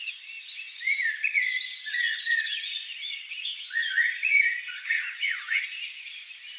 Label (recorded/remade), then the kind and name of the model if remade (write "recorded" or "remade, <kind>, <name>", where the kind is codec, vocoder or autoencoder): remade, vocoder, Vocos